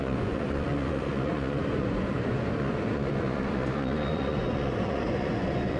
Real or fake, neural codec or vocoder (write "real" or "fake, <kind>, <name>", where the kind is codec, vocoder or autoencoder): fake, vocoder, Vocos